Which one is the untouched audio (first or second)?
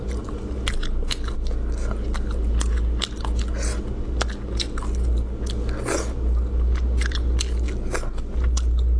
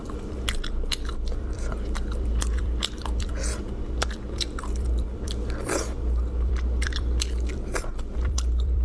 first